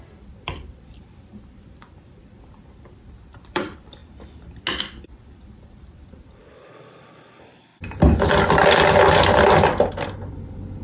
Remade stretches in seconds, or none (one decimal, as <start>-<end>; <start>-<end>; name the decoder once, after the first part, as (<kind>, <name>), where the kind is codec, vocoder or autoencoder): 0.0-4.0 (vocoder, BigVGAN v2); 4.8-7.7; 9.9-10.8